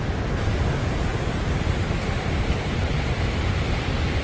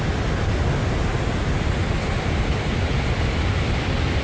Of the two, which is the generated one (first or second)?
first